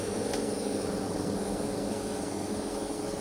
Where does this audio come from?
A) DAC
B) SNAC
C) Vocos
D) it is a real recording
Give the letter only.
B